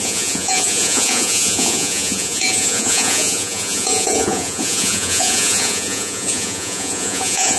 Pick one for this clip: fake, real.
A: fake